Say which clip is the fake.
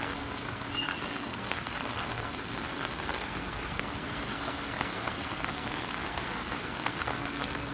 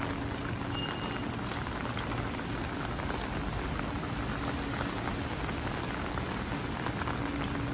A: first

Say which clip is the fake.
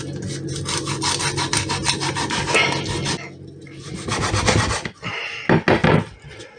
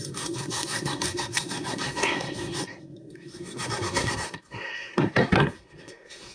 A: second